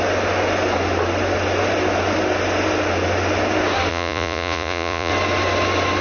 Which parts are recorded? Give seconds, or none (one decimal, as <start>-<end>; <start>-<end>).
0.0-3.9; 5.1-6.0